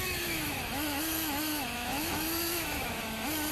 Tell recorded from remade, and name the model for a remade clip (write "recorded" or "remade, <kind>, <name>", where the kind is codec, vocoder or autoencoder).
remade, autoencoder, DAC-VAE